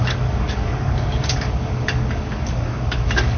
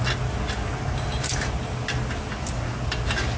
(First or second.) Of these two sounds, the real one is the second